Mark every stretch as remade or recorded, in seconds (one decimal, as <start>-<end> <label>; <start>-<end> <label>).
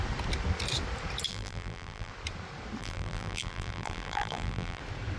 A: 0.0-1.3 recorded; 1.3-2.1 remade; 2.1-2.8 recorded; 2.8-4.8 remade; 4.8-5.2 recorded